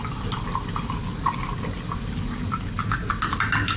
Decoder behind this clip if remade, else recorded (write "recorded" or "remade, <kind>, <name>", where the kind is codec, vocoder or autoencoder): recorded